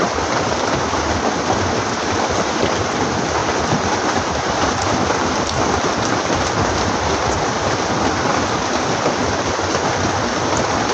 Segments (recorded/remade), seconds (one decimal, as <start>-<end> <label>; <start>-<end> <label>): 0.0-3.4 recorded; 3.4-5.1 remade; 5.1-10.9 recorded